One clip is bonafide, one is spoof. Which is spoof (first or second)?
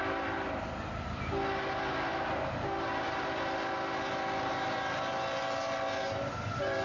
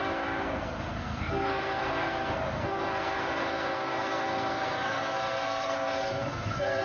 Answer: second